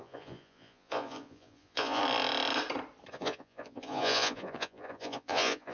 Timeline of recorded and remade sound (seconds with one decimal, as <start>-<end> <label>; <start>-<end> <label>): 0.0-2.0 remade; 2.0-3.1 recorded; 3.1-5.7 remade